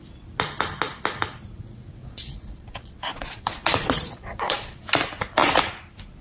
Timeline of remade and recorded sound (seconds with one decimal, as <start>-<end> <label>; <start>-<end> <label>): 0.0-2.0 recorded; 2.0-4.9 remade; 4.9-6.2 recorded